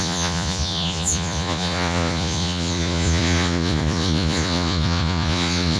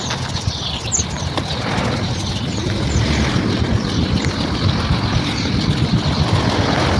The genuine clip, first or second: second